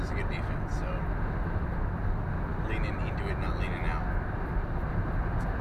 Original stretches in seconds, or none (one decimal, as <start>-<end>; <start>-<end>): 0.0-5.6